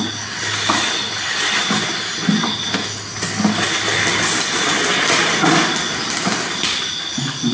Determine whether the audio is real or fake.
real